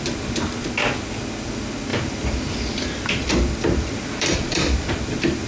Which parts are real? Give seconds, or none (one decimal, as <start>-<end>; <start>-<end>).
0.0-1.9